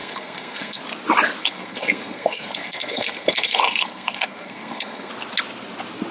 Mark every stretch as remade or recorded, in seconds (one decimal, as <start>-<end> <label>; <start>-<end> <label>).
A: 0.0-0.8 remade; 0.8-1.4 recorded; 1.4-5.1 remade; 5.1-6.1 recorded